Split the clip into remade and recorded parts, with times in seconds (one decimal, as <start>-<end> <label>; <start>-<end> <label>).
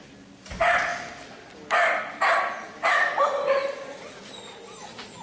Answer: 0.0-0.9 recorded; 0.9-4.0 remade; 4.0-5.2 recorded